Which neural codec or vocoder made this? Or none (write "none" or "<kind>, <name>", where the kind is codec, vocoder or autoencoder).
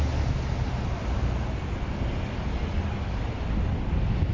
none